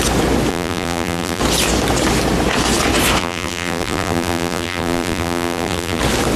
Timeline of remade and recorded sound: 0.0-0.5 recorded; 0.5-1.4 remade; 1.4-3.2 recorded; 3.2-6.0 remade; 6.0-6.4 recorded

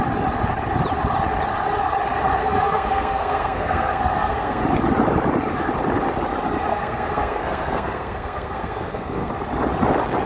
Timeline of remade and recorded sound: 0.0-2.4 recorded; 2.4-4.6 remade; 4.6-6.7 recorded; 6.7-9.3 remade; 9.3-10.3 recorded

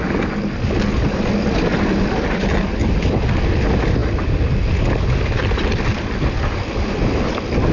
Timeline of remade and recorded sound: 0.0-7.7 recorded

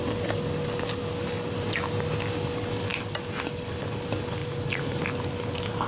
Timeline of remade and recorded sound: 0.0-5.9 recorded